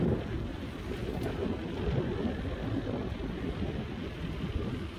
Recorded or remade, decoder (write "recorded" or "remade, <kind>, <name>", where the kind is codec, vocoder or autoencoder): recorded